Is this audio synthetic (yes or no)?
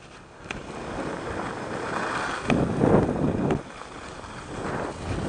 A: no